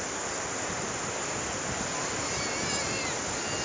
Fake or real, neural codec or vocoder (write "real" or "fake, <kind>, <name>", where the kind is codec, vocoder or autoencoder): real